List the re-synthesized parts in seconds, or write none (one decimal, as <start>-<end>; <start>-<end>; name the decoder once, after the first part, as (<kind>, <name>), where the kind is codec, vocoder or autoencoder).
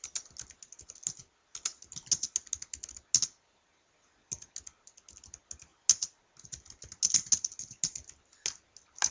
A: none